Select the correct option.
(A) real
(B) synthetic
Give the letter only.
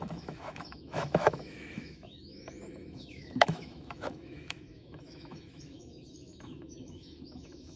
B